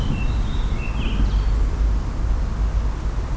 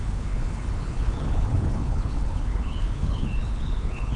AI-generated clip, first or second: second